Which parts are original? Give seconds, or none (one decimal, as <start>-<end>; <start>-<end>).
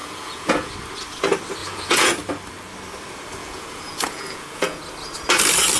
0.7-1.6; 2.1-3.4; 4.8-5.8